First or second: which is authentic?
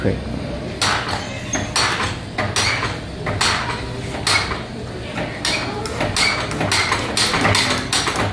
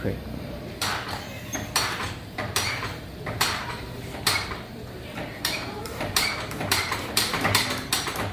first